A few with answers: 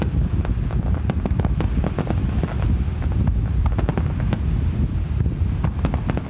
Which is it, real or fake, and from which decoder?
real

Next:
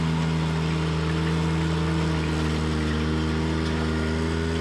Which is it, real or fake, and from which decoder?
real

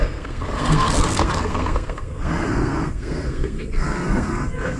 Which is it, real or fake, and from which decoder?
fake, codec, SNAC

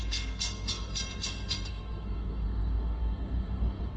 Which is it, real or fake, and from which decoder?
fake, codec, SNAC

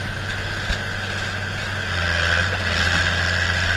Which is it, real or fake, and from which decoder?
real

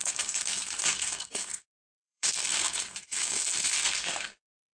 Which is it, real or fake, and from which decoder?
fake, codec, SNAC